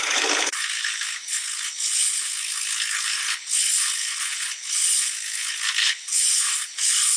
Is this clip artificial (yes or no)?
yes